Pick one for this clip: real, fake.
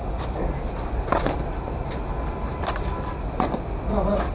real